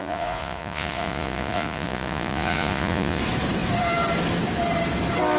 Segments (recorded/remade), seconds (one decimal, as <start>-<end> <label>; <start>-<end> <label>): 0.0-3.2 remade; 3.2-5.4 recorded